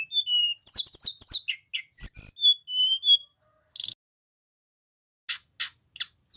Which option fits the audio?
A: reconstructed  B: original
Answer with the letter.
B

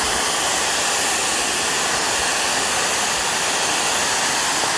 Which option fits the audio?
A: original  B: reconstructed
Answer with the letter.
A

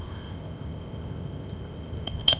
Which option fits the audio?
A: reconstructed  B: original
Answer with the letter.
A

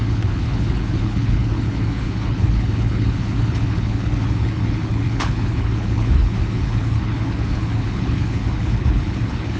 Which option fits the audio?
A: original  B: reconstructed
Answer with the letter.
B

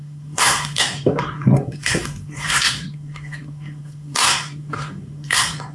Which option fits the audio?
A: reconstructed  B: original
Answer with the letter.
A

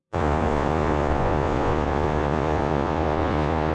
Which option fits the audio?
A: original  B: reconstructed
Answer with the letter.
B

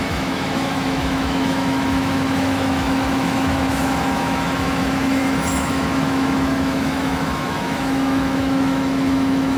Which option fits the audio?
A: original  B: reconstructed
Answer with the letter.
B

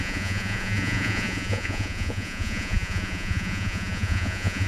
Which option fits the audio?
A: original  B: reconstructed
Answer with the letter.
B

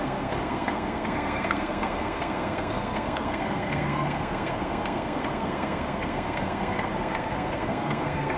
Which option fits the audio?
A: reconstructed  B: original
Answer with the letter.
A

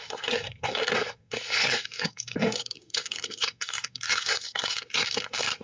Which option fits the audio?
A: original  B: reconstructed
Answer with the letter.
B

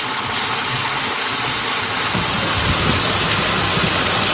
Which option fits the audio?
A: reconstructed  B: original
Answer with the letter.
B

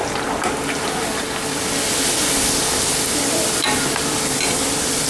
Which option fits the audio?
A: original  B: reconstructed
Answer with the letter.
A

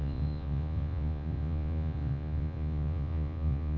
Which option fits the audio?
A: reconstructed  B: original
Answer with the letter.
A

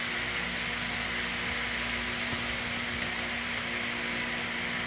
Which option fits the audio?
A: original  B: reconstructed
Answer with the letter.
A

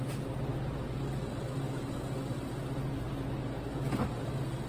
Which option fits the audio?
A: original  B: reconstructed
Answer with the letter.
A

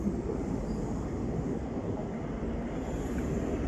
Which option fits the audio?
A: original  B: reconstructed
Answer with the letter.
A